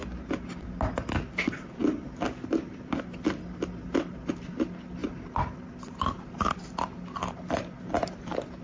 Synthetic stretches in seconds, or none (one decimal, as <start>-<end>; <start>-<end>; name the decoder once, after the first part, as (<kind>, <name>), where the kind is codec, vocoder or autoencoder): none